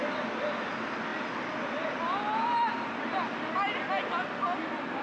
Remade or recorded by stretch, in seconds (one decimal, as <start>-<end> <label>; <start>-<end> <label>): 0.0-5.0 recorded